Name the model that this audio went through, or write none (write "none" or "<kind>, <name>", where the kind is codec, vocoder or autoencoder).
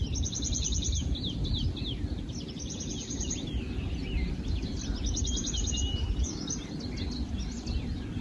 none